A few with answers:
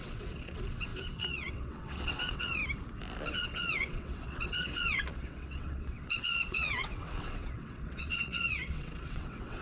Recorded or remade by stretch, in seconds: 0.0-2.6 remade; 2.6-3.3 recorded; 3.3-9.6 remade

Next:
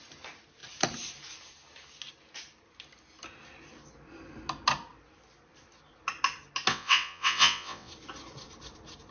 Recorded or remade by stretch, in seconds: 0.0-6.7 recorded; 6.7-7.9 remade; 7.9-9.1 recorded

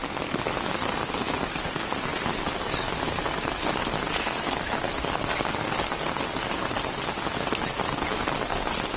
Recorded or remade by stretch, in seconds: 0.0-9.0 recorded

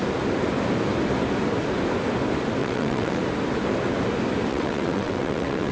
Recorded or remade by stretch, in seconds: 0.0-2.6 recorded; 2.6-3.2 remade; 3.2-4.5 recorded; 4.5-5.7 remade

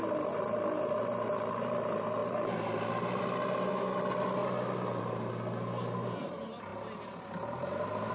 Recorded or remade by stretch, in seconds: 0.0-8.1 recorded

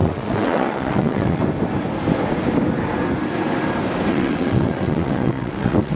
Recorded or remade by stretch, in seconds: 0.0-1.4 remade; 1.4-4.1 recorded; 4.1-6.0 remade